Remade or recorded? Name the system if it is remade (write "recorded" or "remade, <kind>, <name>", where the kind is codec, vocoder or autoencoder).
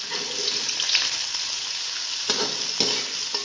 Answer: recorded